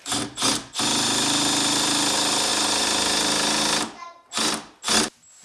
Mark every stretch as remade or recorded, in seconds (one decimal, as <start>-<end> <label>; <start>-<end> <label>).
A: 0.0-5.4 recorded